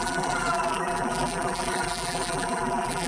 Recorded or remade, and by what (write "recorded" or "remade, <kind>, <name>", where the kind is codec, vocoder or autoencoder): remade, vocoder, BigVGAN v2